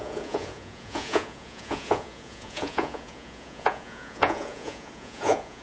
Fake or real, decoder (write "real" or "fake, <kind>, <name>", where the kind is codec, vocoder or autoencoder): fake, vocoder, Vocos